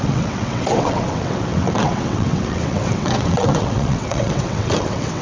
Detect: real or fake fake